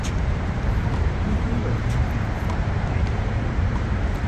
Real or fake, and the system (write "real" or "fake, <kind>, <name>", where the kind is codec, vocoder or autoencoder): fake, vocoder, BigVGAN v2